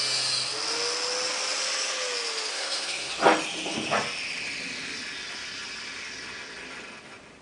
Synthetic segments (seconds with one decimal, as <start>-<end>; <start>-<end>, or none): 2.5-3.1